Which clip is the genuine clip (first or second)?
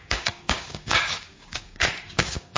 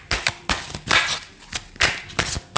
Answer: second